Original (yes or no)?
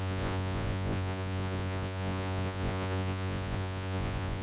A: no